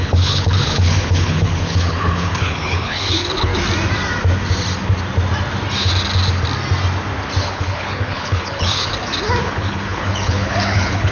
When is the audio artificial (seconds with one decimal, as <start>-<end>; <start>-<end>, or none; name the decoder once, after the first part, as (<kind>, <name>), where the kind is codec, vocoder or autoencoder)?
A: 0.0-3.5 (codec, HILCodec); 7.4-8.9; 9.4-11.1